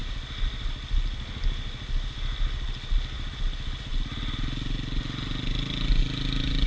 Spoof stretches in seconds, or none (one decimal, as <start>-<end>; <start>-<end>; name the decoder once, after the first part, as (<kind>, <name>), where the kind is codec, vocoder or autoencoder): none